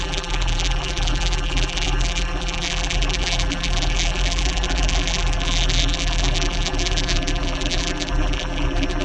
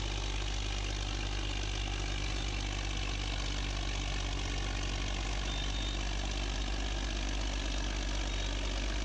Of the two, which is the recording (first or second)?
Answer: second